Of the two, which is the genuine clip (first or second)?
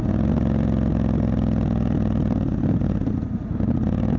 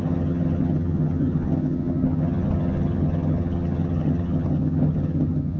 first